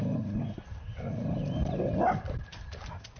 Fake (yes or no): no